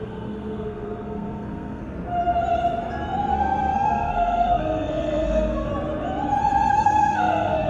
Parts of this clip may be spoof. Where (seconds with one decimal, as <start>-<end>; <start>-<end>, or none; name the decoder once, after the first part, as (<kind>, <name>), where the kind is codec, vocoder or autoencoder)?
0.0-1.8 (codec, SNAC); 3.3-5.7; 6.7-7.7